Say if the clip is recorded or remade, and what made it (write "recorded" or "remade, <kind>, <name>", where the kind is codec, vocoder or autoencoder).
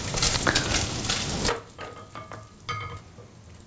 recorded